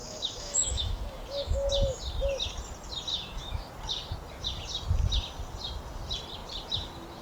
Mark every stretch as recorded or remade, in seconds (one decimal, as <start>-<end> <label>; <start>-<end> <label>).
0.0-1.7 remade; 1.7-3.1 recorded; 3.1-3.7 remade; 3.7-7.2 recorded